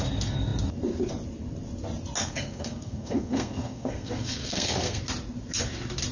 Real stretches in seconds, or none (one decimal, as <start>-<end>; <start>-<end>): 0.0-2.2; 5.0-6.1